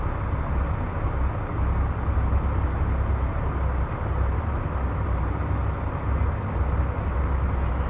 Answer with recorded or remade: recorded